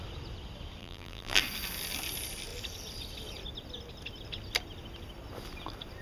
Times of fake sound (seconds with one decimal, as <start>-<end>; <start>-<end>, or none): 0.8-1.4